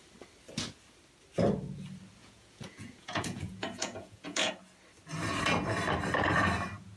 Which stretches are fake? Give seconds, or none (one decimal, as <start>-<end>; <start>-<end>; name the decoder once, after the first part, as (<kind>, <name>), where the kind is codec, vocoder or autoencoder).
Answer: 2.2-4.5 (vocoder, Vocos)